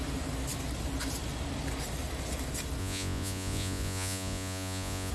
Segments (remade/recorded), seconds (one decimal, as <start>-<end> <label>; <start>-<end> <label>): 0.0-2.8 recorded; 2.8-5.1 remade